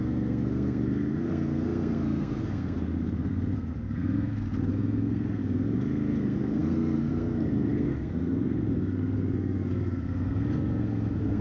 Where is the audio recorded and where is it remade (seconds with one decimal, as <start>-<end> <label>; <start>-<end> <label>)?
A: 0.0-11.4 remade

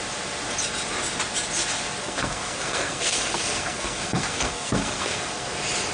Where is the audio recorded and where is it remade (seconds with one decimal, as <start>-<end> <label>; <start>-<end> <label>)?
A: 0.0-2.0 recorded; 2.0-5.5 remade; 5.5-5.9 recorded

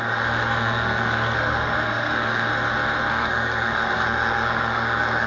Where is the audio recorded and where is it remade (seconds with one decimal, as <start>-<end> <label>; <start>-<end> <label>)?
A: 0.0-2.5 remade; 2.5-3.1 recorded; 3.1-5.3 remade

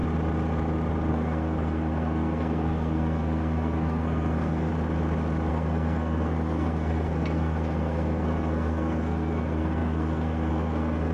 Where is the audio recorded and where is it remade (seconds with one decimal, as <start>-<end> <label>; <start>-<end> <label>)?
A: 0.0-1.1 recorded; 1.1-4.7 remade; 4.7-5.5 recorded; 5.5-11.1 remade

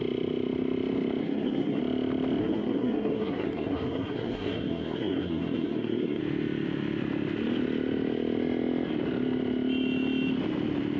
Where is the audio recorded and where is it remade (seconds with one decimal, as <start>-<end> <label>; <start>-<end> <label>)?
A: 0.0-1.2 recorded; 1.2-1.8 remade; 1.8-2.4 recorded; 2.4-6.2 remade; 6.2-11.0 recorded

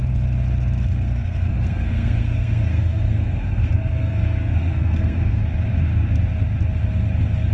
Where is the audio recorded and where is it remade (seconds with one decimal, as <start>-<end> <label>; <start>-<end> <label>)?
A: 0.0-0.9 recorded; 0.9-5.4 remade; 5.4-7.5 recorded